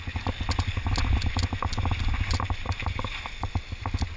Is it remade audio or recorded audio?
recorded